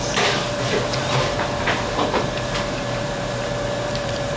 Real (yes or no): no